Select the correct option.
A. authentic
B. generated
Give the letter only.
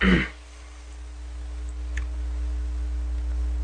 A